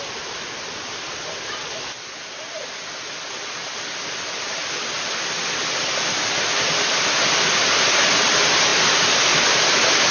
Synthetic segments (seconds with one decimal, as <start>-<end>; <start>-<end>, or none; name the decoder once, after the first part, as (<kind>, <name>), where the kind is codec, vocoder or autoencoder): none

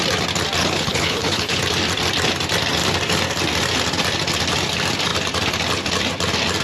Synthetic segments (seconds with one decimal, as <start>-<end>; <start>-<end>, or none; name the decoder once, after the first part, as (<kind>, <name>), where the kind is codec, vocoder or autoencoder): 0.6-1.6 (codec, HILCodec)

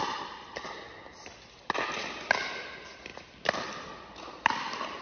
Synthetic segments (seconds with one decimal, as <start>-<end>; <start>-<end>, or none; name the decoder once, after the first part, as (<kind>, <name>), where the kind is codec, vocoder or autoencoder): none

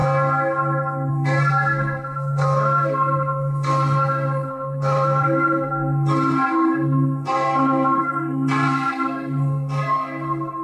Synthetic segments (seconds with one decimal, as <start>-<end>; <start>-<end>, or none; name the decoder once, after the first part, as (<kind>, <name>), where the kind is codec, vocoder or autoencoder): 1.1-10.6 (codec, SNAC)

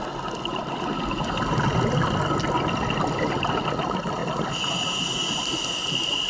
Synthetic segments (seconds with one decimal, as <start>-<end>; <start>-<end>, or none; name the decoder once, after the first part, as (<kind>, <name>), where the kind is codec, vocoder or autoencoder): none

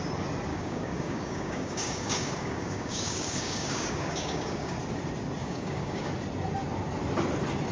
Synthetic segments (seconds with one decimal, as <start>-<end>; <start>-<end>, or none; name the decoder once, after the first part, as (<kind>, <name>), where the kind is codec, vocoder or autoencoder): 0.5-4.8 (codec, DAC); 5.4-6.1

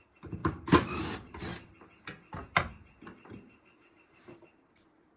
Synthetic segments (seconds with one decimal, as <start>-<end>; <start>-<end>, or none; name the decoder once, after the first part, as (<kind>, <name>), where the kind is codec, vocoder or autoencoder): 0.0-1.5 (vocoder, BigVGAN v2); 4.3-5.2

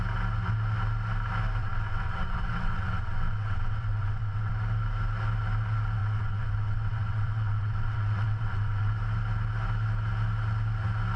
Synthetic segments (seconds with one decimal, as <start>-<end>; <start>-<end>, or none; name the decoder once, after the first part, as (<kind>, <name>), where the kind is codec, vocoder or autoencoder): 1.6-4.5 (vocoder, WaveNeXt); 6.0-8.9